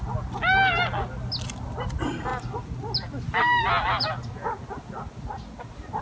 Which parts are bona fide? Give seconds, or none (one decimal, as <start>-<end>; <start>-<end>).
0.0-6.0